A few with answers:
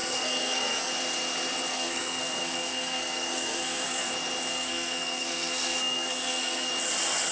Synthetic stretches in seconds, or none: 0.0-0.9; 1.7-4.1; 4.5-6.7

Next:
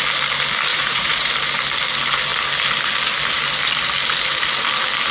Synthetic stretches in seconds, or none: 0.7-1.3

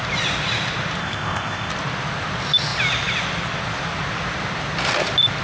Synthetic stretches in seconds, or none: 1.0-1.7

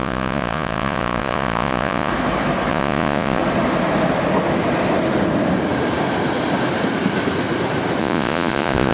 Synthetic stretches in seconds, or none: 0.0-2.1; 2.7-3.4; 8.0-8.9

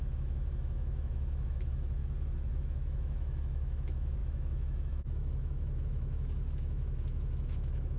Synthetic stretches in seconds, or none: 0.0-2.0; 2.6-8.0

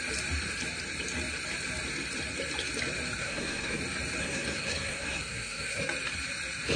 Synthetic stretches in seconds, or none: 3.2-3.8; 4.2-5.8

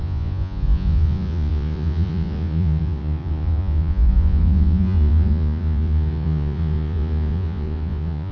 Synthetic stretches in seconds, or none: 0.0-8.3

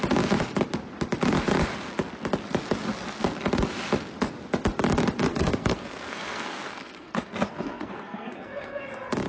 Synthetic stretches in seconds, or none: 5.3-8.8